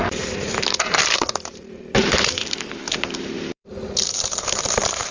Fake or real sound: fake